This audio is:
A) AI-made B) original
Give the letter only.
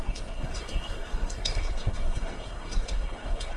A